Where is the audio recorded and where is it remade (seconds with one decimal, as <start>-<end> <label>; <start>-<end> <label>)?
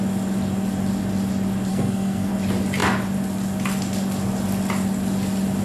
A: 0.0-1.7 recorded; 1.7-2.3 remade; 2.3-5.6 recorded